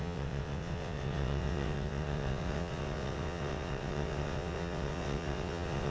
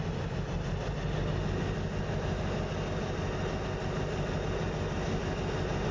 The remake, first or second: first